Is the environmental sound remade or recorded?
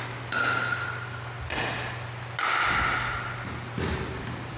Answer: recorded